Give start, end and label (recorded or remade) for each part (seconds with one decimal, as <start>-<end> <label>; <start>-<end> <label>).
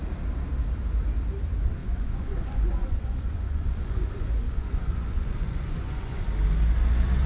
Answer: 0.0-1.8 recorded; 1.8-6.2 remade; 6.2-7.3 recorded